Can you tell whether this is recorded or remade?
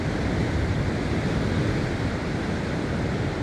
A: remade